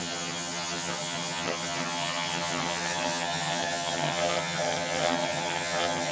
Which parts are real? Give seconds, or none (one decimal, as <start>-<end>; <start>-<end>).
none